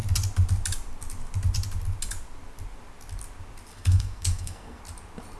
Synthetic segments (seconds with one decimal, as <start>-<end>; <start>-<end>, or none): 3.7-4.8